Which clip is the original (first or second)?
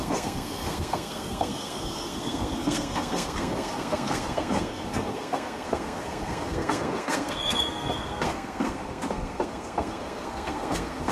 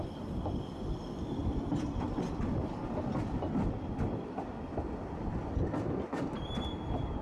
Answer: second